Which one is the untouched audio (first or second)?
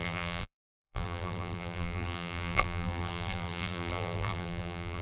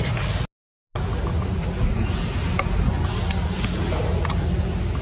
second